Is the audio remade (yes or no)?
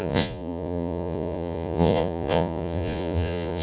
yes